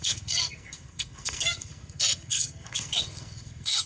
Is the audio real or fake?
fake